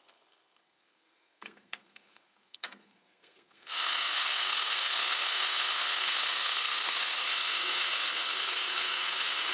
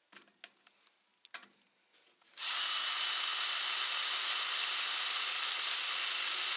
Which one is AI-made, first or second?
first